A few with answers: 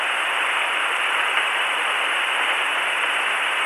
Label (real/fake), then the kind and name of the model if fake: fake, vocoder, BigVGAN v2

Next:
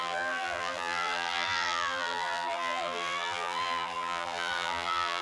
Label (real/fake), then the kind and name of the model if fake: fake, vocoder, BigVGAN v2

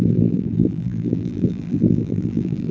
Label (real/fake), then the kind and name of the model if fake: fake, vocoder, BigVGAN v2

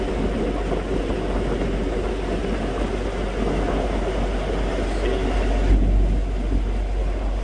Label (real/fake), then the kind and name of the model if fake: real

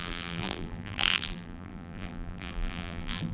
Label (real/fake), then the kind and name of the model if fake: fake, vocoder, BigVGAN v2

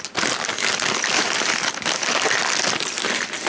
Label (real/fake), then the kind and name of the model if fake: real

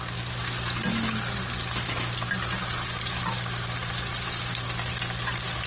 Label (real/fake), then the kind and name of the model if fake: real